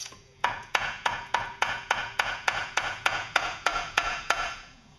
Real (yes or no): no